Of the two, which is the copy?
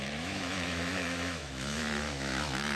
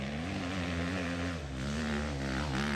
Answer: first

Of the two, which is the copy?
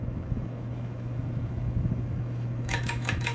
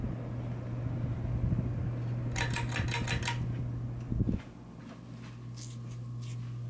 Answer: first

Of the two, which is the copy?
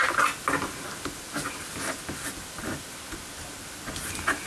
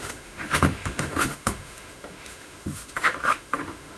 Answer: second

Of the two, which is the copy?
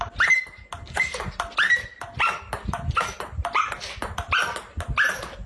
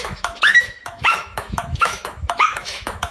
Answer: second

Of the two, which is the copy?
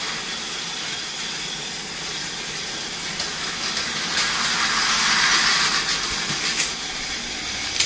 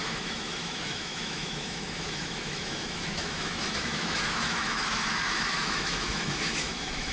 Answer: second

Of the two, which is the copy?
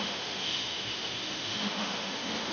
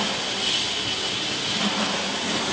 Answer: first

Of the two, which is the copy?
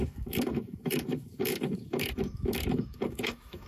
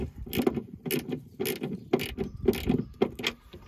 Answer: first